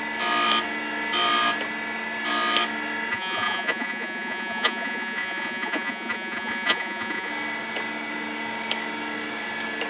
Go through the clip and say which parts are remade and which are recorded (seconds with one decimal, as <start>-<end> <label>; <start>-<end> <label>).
0.0-3.1 recorded; 3.1-7.3 remade; 7.3-9.9 recorded